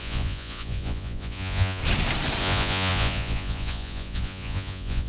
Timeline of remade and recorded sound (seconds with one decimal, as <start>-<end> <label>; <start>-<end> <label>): 0.0-1.8 remade; 1.8-2.4 recorded; 2.4-5.1 remade